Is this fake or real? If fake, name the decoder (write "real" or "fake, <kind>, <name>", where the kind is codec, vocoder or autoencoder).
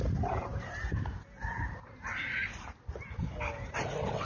real